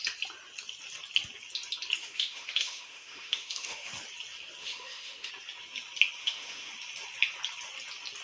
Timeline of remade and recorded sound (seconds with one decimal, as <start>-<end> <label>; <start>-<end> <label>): 0.0-2.0 recorded; 2.0-3.9 remade; 3.9-4.6 recorded; 4.6-5.3 remade; 5.3-6.2 recorded; 6.2-6.7 remade; 6.7-8.2 recorded